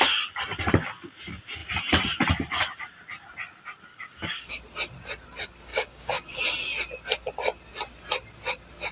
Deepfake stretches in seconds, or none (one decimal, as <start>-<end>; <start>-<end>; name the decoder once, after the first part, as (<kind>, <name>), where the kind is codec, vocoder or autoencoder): 3.9-4.6 (codec, DAC); 5.7-6.4